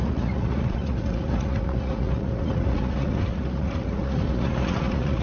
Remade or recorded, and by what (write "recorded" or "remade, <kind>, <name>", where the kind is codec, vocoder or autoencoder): remade, vocoder, Vocos